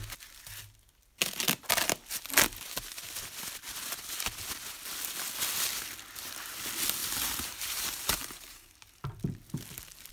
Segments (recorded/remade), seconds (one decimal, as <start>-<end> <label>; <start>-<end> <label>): 0.0-7.0 recorded; 7.0-8.9 remade; 8.9-10.1 recorded